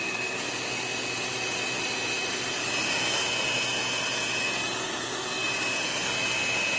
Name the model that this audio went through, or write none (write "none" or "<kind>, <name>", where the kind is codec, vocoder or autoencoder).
none